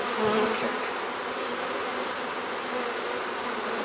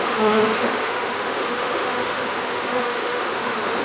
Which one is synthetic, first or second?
second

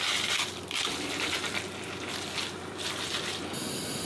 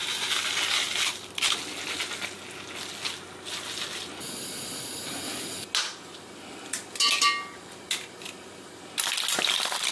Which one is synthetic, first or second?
first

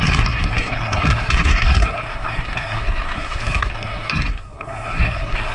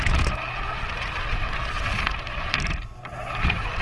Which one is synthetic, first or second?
first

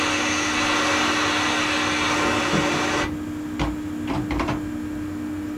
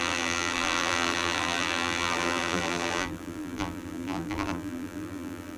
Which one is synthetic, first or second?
second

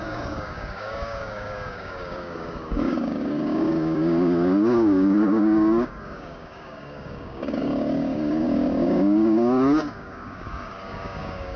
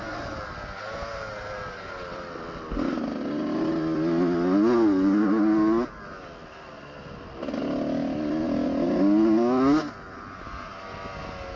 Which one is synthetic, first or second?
first